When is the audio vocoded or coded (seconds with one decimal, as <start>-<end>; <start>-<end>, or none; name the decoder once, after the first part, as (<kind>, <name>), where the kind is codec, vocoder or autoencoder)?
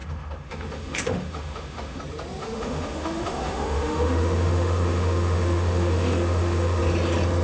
0.0-2.0 (autoencoder, DAC-VAE); 2.4-6.8